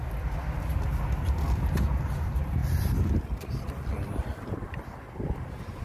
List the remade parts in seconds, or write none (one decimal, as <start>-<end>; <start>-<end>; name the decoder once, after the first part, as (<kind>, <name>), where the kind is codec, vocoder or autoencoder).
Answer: none